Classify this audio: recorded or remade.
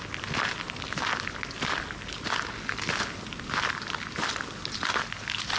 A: recorded